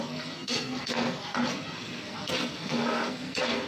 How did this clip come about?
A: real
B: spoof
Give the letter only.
B